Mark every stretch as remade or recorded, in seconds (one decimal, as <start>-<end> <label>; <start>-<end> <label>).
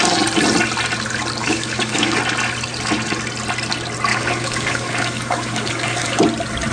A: 0.0-1.4 recorded; 1.4-2.2 remade; 2.2-4.1 recorded; 4.1-6.2 remade; 6.2-6.7 recorded